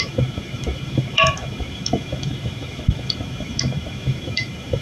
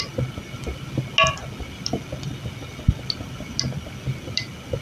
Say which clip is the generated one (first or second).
first